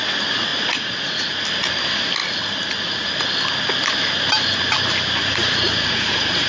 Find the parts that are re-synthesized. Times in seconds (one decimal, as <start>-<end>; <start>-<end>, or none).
0.5-1.4; 5.2-6.5